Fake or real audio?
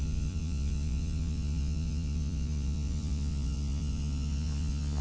fake